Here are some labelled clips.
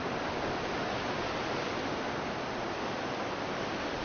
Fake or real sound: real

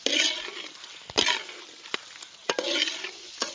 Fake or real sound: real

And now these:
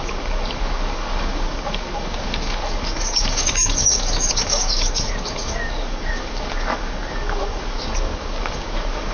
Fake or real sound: fake